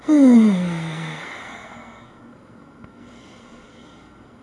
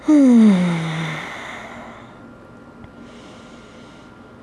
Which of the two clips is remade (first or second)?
first